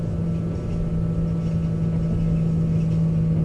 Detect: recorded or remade recorded